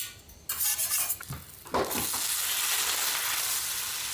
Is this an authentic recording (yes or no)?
yes